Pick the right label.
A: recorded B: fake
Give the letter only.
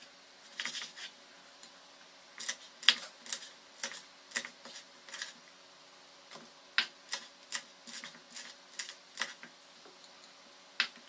A